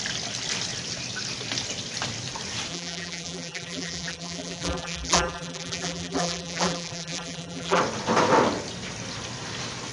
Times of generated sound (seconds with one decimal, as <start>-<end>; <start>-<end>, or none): 2.7-7.8